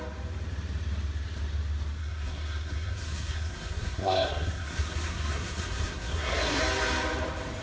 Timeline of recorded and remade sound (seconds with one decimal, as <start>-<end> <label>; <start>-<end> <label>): 0.0-2.0 recorded; 2.0-6.6 remade; 6.6-7.6 recorded